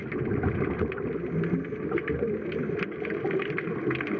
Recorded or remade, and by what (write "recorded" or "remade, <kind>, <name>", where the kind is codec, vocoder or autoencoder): recorded